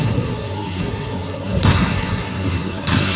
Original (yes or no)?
no